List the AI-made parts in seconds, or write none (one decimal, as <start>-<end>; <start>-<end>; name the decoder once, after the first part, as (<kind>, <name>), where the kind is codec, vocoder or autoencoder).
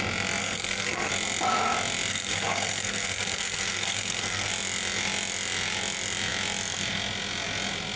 0.4-1.1 (codec, SNAC); 2.1-4.5